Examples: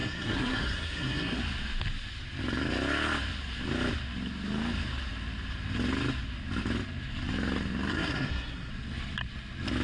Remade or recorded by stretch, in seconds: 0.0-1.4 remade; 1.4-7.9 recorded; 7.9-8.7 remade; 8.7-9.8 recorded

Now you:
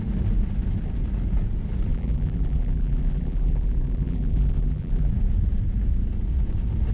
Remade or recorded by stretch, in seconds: 0.0-1.9 recorded; 1.9-5.1 remade; 5.1-6.9 recorded

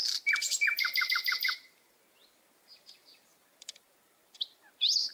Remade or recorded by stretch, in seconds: 0.0-1.1 recorded; 1.1-5.1 remade

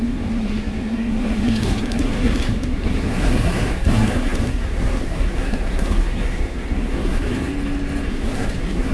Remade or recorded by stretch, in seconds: 0.0-7.5 remade; 7.5-8.1 recorded; 8.1-8.9 remade

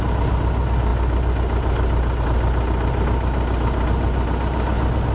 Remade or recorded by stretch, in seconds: 0.0-5.1 recorded